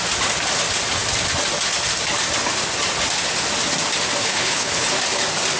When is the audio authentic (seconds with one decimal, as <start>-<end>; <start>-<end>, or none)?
0.0-4.2; 4.9-5.6